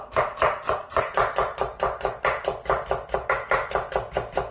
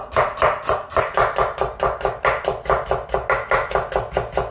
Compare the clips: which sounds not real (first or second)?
first